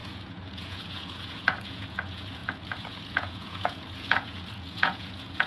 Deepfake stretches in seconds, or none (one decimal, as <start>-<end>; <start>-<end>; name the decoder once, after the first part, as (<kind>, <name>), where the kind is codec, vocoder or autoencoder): 0.0-5.5 (vocoder, Vocos)